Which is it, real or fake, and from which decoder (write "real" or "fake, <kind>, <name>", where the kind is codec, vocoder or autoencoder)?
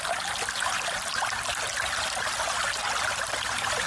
real